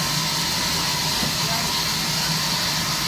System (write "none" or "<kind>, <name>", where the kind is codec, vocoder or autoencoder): none